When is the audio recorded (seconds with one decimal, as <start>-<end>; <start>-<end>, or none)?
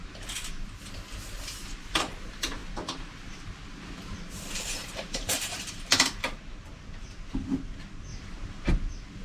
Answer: 0.0-4.8; 6.4-8.1; 8.7-9.2